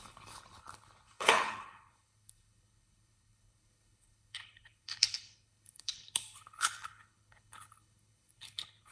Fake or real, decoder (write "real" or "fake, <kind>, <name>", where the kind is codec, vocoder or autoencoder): fake, codec, HILCodec